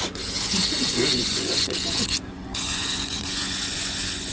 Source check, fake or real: fake